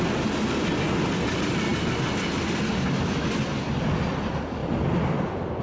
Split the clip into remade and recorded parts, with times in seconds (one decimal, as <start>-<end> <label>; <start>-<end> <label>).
0.0-5.6 recorded